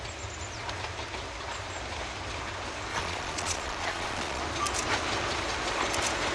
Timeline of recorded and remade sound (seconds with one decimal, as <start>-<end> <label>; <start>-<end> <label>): 0.0-2.9 recorded; 2.9-4.4 remade; 4.4-6.3 recorded